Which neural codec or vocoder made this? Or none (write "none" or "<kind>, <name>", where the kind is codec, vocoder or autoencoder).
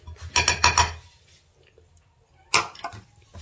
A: none